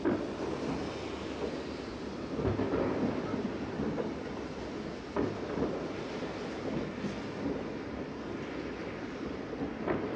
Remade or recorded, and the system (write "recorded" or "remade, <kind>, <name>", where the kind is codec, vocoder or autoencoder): recorded